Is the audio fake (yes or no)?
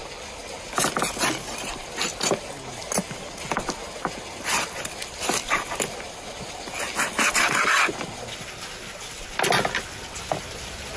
no